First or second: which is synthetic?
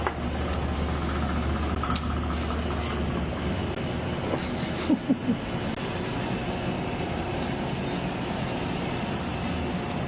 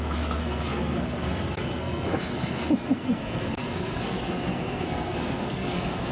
second